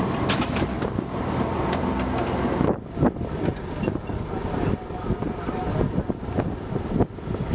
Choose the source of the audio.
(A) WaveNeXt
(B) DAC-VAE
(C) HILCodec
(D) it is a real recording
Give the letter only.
D